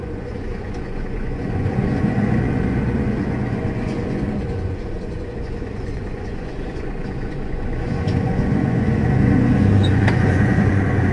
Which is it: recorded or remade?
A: remade